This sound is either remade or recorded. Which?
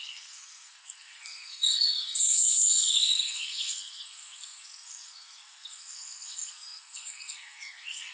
remade